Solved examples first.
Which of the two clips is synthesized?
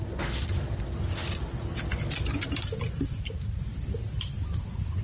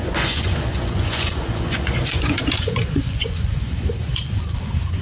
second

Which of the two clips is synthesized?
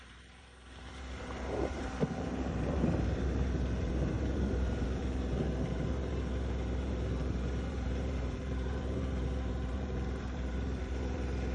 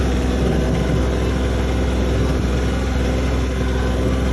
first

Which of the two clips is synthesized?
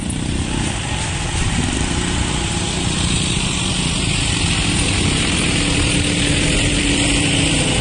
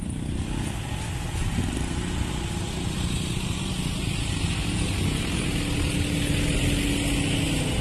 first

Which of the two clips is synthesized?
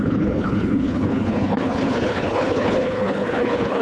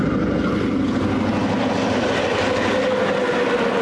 first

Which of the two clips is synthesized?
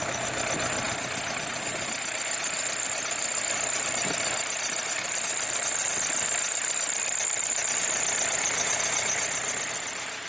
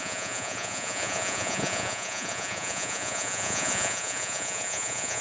second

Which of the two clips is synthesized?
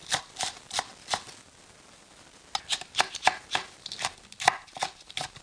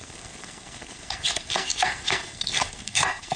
second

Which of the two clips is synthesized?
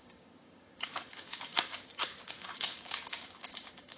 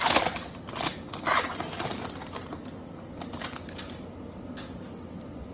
first